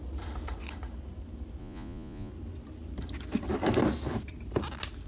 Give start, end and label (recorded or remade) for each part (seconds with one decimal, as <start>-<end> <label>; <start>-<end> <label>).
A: 0.0-1.6 recorded; 1.6-2.3 remade; 2.3-5.1 recorded